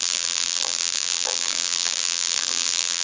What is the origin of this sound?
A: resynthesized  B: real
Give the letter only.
A